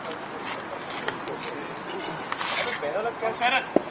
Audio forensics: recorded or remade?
recorded